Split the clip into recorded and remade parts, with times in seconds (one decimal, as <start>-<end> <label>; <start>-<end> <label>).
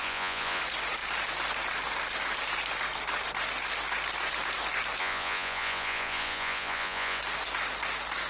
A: 0.0-0.6 remade; 0.6-5.0 recorded; 5.0-7.2 remade; 7.2-8.3 recorded